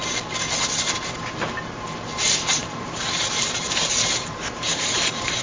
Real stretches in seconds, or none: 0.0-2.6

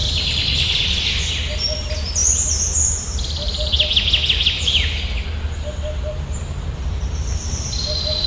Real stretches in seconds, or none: 1.3-8.3

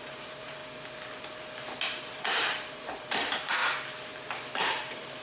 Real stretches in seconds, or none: 0.6-2.2; 3.6-4.7

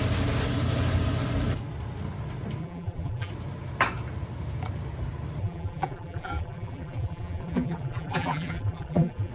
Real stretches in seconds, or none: 0.0-2.6; 3.3-5.4